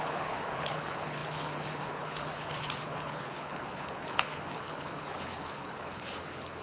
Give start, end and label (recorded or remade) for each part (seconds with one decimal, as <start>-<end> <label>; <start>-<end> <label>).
0.0-6.6 remade